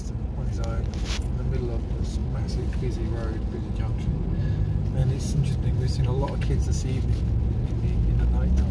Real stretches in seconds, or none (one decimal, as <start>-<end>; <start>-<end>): 0.0-2.2; 2.7-5.0; 6.6-8.7